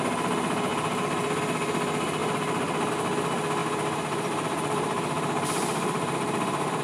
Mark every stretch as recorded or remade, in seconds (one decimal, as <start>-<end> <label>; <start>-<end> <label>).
0.0-0.7 recorded; 0.7-1.4 remade; 1.4-2.2 recorded; 2.2-2.9 remade; 2.9-3.6 recorded; 3.6-6.8 remade